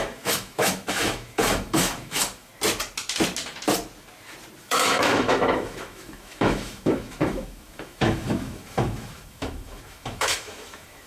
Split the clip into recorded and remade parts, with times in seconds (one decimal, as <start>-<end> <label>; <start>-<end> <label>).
0.0-2.5 remade; 2.5-4.6 recorded; 4.6-11.1 remade